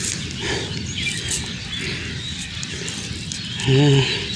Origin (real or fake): real